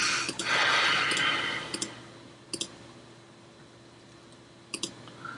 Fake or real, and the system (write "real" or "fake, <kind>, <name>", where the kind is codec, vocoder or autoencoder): real